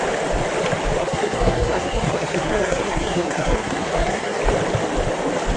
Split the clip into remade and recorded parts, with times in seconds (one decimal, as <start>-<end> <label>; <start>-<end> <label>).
0.0-1.0 recorded; 1.0-4.4 remade; 4.4-5.6 recorded